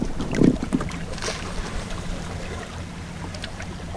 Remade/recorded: remade